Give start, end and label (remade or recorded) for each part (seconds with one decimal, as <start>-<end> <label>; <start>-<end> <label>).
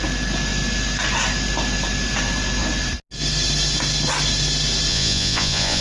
0.0-4.9 recorded; 4.9-5.8 remade